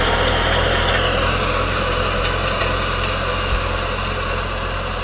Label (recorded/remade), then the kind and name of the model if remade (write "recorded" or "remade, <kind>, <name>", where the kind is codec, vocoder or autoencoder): recorded